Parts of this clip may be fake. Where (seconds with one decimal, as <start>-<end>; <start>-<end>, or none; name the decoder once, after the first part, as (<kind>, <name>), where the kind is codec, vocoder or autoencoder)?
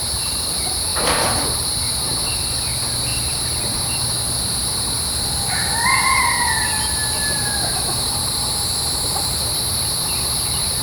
0.9-1.7 (vocoder, BigVGAN v2); 3.1-4.9; 7.9-10.8